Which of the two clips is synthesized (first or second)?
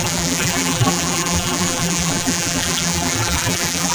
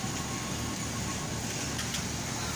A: first